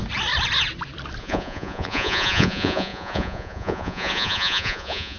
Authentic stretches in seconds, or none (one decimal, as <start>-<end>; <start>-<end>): 0.0-1.2